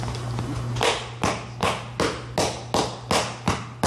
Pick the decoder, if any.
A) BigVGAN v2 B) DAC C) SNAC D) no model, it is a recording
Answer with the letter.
D